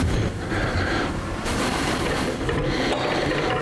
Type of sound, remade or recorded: remade